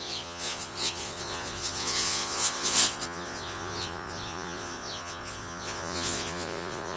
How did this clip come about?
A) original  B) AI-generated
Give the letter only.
B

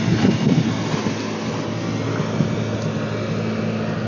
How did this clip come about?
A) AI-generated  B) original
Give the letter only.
B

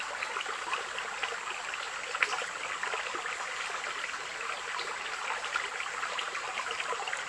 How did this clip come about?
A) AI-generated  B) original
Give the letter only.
B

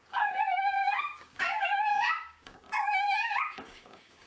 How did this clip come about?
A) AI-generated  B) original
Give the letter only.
A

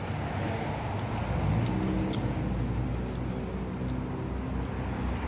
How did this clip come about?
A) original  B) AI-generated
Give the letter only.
A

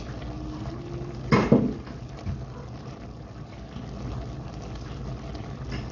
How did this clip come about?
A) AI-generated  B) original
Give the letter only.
B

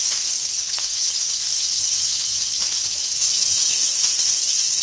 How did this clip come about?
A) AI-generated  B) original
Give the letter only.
A